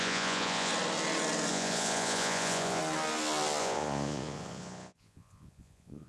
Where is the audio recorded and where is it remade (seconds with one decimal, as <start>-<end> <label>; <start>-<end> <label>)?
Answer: 0.0-0.7 remade; 0.7-1.5 recorded; 1.5-2.8 remade; 2.8-3.6 recorded; 3.6-6.1 remade